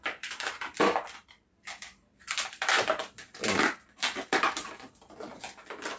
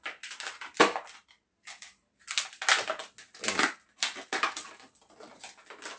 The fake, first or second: first